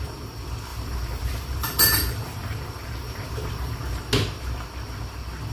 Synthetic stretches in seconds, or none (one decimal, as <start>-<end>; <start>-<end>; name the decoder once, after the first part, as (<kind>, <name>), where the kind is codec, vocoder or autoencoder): 0.7-4.0 (vocoder, BigVGAN v2)

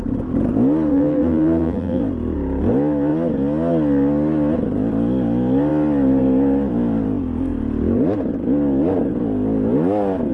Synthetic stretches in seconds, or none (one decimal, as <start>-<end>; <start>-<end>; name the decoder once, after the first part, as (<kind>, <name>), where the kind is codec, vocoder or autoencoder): 0.9-2.0 (vocoder, BigVGAN v2)